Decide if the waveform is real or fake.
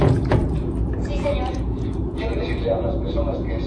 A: fake